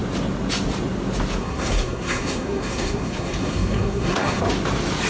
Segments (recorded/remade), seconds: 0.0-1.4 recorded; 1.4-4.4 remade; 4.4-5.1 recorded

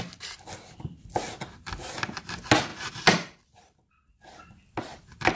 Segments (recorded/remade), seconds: 0.0-5.4 recorded

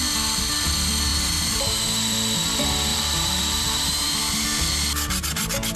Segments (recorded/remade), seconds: 0.0-1.1 recorded; 1.1-1.8 remade; 1.8-2.9 recorded; 2.9-4.2 remade; 4.2-5.8 recorded

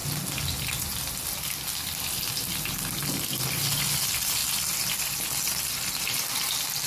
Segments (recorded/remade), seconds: 0.0-6.9 recorded

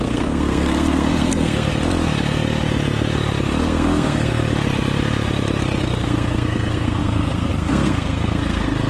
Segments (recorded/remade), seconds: 0.0-1.7 remade; 1.7-3.6 recorded; 3.6-4.3 remade; 4.3-5.8 recorded; 5.8-8.9 remade

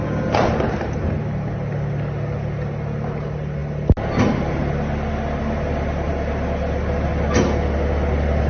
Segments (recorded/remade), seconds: 0.0-8.5 recorded

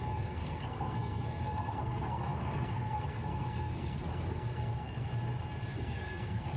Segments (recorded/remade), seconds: 0.0-5.1 remade; 5.1-5.8 recorded; 5.8-6.6 remade